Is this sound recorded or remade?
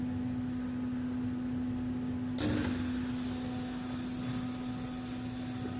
recorded